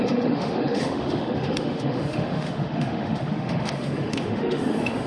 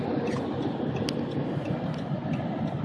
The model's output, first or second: first